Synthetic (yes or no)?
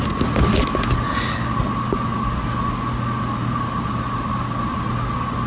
no